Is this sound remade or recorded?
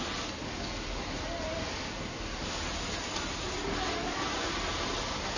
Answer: recorded